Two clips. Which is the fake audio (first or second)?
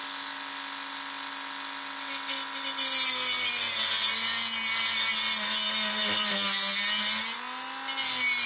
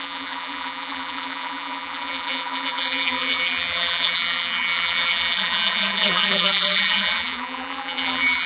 second